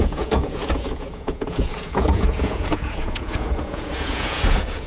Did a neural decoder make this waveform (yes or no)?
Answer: yes